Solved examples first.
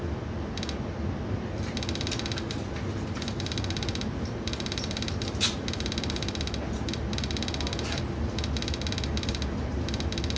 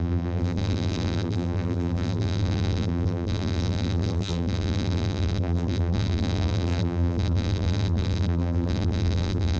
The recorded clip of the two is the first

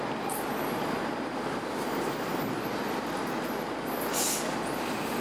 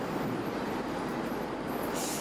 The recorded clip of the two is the first